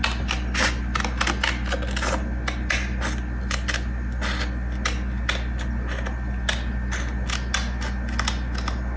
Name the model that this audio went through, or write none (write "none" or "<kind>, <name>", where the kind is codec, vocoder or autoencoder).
none